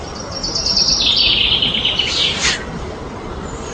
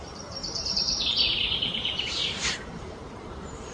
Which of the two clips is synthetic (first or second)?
second